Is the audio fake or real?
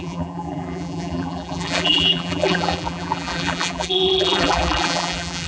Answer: fake